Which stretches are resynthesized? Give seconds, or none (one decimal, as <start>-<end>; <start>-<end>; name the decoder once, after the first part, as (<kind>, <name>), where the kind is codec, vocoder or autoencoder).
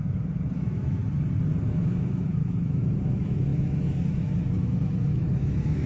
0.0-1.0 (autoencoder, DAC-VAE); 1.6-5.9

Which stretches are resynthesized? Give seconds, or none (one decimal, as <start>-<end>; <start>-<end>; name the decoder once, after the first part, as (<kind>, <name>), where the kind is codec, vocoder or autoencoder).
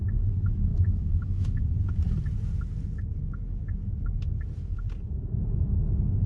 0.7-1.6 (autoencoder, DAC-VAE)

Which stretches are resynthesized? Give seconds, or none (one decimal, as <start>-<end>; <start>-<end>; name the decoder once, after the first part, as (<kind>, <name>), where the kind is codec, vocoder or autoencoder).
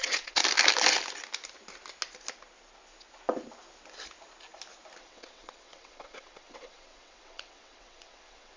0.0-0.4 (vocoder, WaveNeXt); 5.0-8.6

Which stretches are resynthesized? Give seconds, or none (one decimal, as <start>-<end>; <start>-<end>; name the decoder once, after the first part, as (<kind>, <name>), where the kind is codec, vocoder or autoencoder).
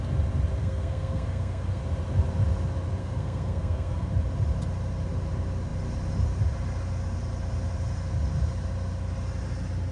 0.6-1.8 (codec, SNAC); 3.0-4.1